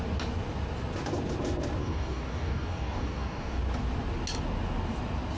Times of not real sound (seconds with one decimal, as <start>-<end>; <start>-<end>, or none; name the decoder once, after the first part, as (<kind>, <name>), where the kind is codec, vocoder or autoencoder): 1.8-3.6 (codec, DAC)